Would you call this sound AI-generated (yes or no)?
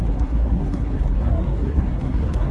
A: yes